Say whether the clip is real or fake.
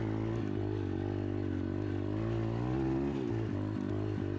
real